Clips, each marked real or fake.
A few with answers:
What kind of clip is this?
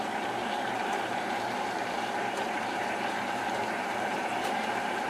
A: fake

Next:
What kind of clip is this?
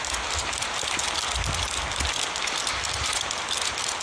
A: real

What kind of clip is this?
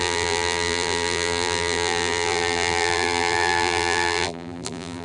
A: fake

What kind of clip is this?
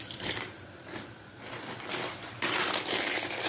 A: fake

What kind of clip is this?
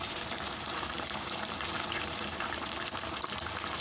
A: fake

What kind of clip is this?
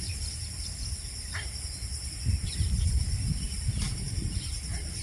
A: fake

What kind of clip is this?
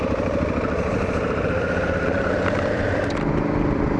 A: fake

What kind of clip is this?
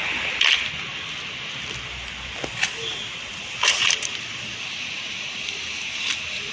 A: fake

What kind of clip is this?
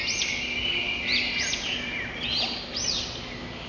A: real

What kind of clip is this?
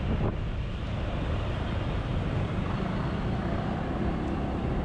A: fake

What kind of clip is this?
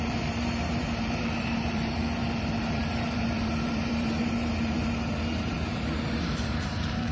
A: fake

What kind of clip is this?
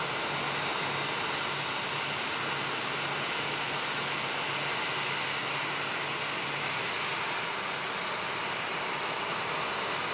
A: real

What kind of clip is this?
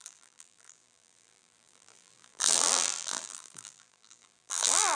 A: fake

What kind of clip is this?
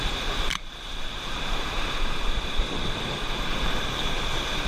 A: fake